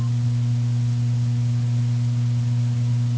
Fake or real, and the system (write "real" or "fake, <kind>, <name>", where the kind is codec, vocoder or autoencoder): real